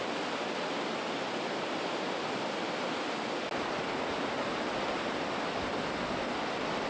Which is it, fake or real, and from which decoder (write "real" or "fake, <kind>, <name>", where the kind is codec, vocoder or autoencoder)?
real